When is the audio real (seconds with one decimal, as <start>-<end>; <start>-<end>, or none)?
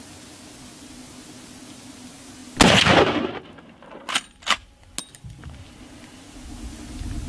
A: 0.0-7.3